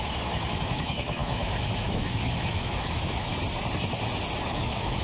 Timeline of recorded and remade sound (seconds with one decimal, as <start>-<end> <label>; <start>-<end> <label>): 0.0-3.3 remade; 3.3-4.4 recorded; 4.4-5.0 remade